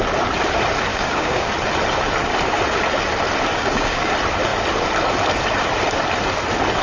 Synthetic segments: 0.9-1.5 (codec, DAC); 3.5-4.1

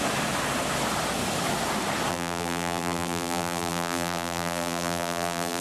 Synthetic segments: 2.1-5.6 (vocoder, BigVGAN v2)

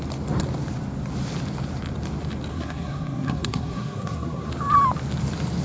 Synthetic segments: 2.5-4.5 (codec, SNAC)